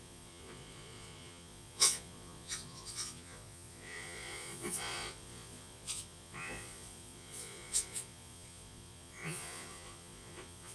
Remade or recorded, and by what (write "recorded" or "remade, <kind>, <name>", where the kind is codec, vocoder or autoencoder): remade, vocoder, Vocos